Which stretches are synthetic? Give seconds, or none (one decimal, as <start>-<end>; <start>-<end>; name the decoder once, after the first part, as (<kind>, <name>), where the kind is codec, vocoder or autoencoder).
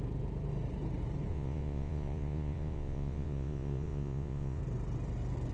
1.3-4.6 (vocoder, Vocos)